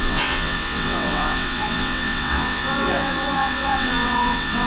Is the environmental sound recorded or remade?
remade